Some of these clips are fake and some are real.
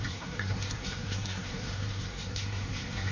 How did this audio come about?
fake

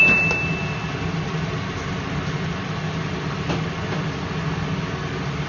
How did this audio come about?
real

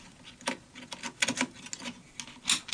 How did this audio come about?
real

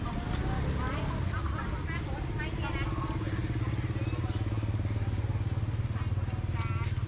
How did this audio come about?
real